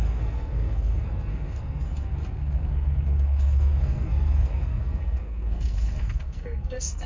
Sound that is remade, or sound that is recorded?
remade